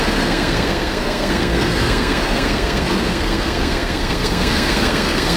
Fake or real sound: fake